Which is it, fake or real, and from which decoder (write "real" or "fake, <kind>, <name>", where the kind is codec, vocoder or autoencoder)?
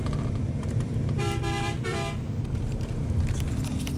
fake, vocoder, BigVGAN v2